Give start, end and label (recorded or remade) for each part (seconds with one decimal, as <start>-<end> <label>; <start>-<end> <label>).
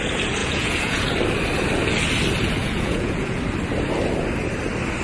0.0-0.4 recorded; 0.4-1.0 remade; 1.0-2.6 recorded; 2.6-3.4 remade; 3.4-5.0 recorded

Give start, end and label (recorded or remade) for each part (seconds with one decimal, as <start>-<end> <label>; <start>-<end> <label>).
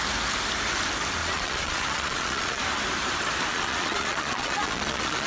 0.0-1.2 recorded; 1.2-2.6 remade; 2.6-3.5 recorded; 3.5-5.3 remade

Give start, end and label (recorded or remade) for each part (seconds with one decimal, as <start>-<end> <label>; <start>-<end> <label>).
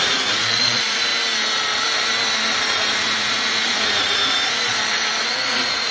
0.0-1.1 remade; 1.1-2.6 recorded; 2.6-4.7 remade; 4.7-5.2 recorded; 5.2-5.9 remade